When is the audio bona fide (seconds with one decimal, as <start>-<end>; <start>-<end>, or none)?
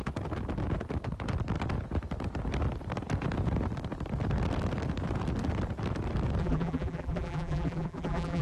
0.0-6.4